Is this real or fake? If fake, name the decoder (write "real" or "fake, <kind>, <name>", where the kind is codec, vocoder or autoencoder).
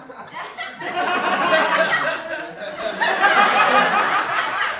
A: real